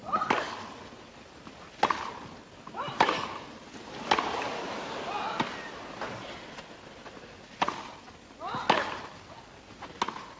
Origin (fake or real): real